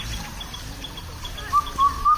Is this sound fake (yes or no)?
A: no